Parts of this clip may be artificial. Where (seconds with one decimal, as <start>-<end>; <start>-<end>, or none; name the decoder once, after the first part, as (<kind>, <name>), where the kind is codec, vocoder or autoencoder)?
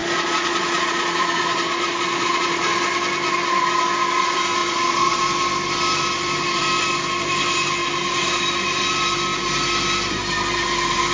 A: 0.0-2.8 (vocoder, Vocos); 4.6-5.2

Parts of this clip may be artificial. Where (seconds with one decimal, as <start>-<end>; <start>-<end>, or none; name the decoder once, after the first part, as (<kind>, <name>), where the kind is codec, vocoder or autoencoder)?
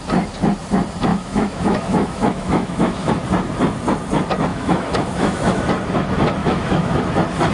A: 1.1-3.1 (autoencoder, DAC-VAE); 4.5-5.6; 6.4-7.0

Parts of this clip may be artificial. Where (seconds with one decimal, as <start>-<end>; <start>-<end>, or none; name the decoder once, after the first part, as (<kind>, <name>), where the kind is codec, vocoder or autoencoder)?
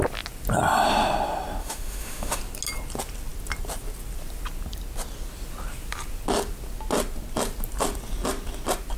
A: 1.6-2.4 (autoencoder, DAC-VAE)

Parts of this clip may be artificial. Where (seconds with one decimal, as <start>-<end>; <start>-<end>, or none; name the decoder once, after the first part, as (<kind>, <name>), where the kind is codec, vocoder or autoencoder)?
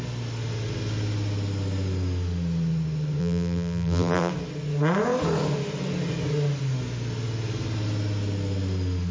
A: 3.2-4.3 (vocoder, BigVGAN v2)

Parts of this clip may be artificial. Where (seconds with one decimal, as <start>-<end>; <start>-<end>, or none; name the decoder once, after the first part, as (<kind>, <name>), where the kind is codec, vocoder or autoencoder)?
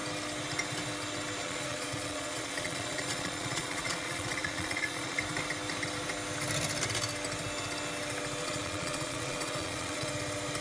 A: 1.4-5.2 (vocoder, Vocos); 8.4-10.1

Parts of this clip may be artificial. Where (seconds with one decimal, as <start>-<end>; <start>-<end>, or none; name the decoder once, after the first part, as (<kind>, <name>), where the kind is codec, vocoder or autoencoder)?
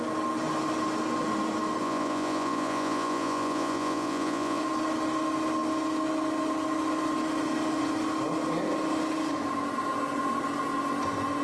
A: 1.8-4.6 (vocoder, Vocos)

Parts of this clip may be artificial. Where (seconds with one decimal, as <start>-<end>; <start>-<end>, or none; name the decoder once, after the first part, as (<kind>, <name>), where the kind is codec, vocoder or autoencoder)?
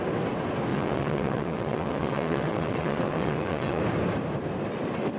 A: 0.7-3.8 (vocoder, WaveNeXt)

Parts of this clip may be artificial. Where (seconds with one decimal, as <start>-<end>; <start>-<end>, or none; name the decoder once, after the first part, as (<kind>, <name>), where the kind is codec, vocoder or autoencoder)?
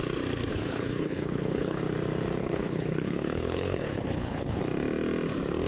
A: 0.5-1.8 (codec, HILCodec); 2.4-4.6